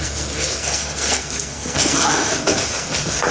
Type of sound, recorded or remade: remade